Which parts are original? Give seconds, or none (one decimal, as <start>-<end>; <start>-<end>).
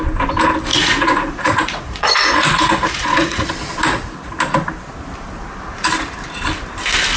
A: 0.0-0.7; 3.5-7.2